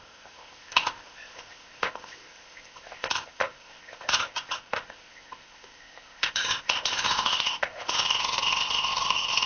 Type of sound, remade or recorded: remade